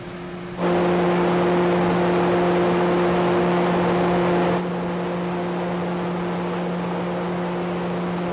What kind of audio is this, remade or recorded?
recorded